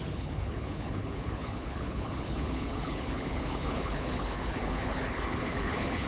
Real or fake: fake